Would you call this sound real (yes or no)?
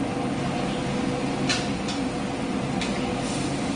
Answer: yes